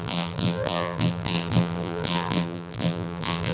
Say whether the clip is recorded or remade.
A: remade